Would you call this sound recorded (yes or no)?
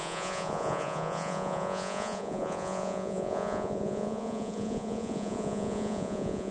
no